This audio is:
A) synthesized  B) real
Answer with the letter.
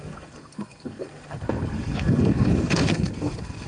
A